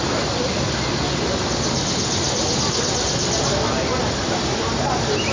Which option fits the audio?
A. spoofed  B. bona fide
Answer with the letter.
B